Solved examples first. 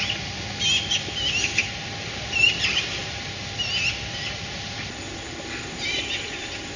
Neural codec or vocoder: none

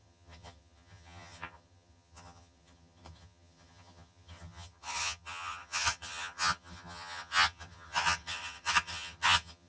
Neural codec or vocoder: vocoder, HiFi-GAN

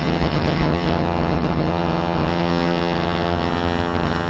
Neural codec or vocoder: vocoder, HiFi-GAN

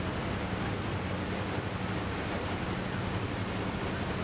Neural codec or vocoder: none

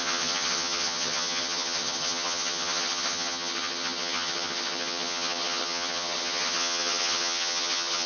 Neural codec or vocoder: vocoder, HiFi-GAN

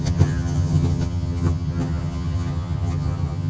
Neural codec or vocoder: vocoder, HiFi-GAN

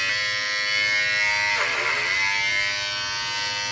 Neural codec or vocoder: none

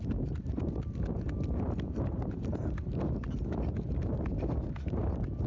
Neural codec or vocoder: none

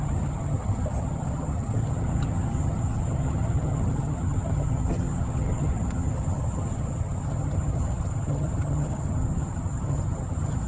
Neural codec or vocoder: vocoder, HiFi-GAN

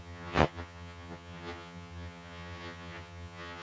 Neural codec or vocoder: vocoder, HiFi-GAN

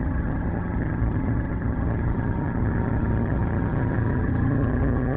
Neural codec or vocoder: vocoder, HiFi-GAN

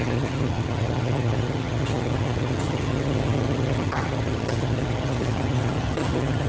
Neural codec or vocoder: vocoder, HiFi-GAN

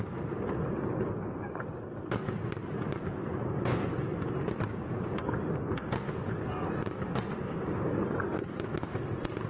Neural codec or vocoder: none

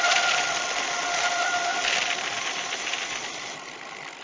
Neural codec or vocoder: none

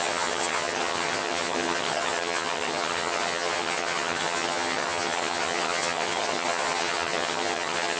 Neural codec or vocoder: vocoder, HiFi-GAN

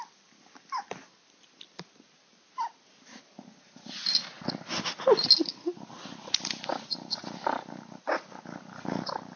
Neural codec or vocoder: none